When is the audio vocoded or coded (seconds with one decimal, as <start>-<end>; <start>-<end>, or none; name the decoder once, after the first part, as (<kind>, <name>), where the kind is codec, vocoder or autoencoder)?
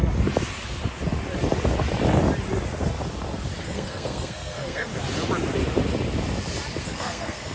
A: 3.6-4.9 (codec, SNAC); 6.8-7.5